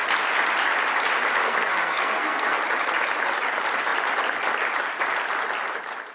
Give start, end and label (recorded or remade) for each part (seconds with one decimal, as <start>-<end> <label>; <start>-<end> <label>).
0.0-1.4 recorded; 1.4-2.6 remade; 2.6-6.1 recorded